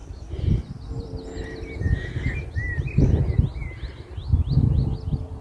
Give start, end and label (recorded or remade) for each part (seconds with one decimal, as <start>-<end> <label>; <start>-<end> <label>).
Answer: 0.0-5.4 recorded